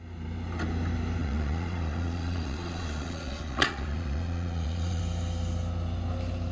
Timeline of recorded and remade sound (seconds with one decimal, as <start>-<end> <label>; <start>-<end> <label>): 0.0-1.2 recorded; 1.2-5.0 remade; 5.0-6.5 recorded